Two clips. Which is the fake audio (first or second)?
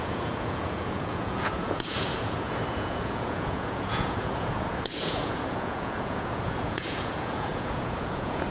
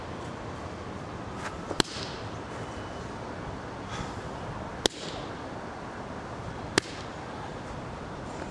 first